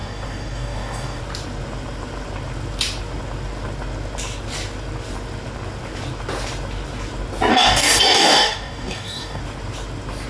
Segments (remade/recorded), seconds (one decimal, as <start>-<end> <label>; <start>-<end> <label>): 0.0-1.2 remade; 1.2-7.5 recorded; 7.5-9.4 remade; 9.4-10.3 recorded